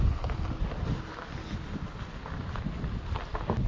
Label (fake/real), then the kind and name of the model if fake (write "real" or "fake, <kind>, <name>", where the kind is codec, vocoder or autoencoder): real